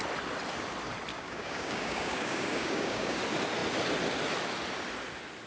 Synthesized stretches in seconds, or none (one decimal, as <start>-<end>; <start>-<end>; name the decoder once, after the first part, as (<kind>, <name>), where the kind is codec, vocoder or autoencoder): 1.1-3.2 (codec, DAC)